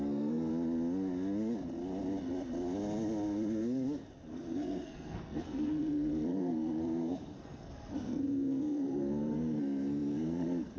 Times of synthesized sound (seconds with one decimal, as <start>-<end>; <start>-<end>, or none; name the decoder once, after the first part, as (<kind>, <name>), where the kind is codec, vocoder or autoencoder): 0.0-0.5 (codec, SNAC); 4.3-10.8